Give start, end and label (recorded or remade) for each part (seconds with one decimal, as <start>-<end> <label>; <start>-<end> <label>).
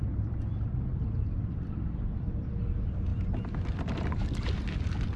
0.0-5.2 recorded